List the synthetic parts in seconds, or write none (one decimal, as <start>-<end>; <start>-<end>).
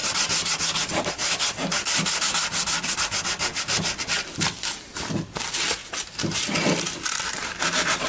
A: 0.0-1.1